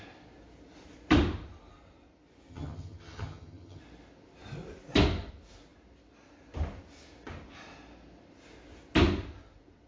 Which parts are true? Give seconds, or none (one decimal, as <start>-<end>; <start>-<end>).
0.0-2.5; 3.8-9.9